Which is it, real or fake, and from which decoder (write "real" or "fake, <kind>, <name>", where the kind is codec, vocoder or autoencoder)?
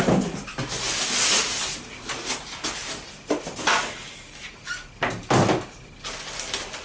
real